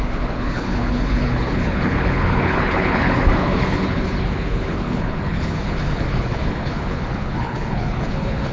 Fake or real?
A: fake